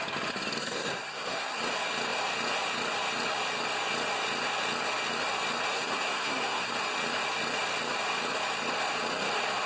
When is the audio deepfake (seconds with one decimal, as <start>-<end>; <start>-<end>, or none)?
0.6-1.6; 5.7-6.7